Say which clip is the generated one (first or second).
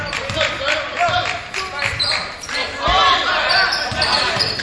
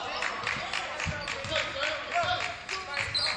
first